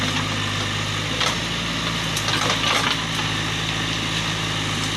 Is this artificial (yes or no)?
no